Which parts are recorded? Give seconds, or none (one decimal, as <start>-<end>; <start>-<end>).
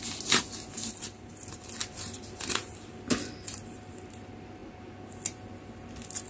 0.0-6.3